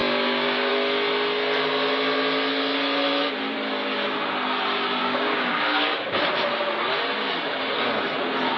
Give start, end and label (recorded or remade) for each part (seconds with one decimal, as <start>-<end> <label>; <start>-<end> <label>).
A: 0.0-0.7 remade; 0.7-5.0 recorded; 5.0-6.2 remade; 6.2-8.6 recorded